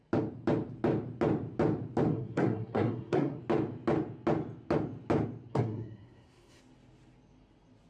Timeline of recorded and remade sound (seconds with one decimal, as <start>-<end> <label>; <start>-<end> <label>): 0.0-2.1 recorded; 2.1-3.4 remade; 3.4-5.5 recorded; 5.5-6.6 remade; 6.6-7.9 recorded